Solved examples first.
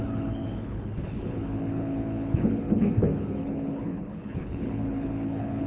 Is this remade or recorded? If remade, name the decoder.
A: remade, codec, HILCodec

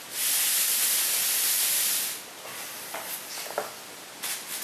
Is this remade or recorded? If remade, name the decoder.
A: recorded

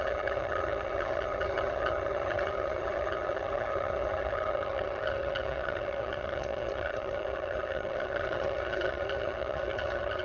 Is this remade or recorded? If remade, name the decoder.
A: remade, vocoder, HiFi-GAN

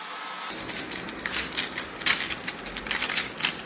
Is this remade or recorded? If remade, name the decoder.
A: recorded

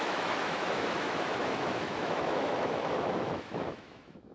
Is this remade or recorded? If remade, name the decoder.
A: remade, autoencoder, DAC-VAE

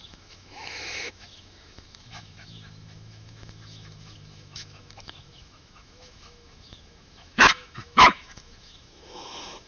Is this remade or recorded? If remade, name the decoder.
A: remade, autoencoder, DAC-VAE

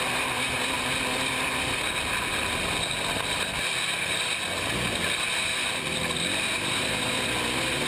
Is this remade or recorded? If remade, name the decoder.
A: recorded